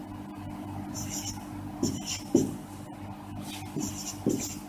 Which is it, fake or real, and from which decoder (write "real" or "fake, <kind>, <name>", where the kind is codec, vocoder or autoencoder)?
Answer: real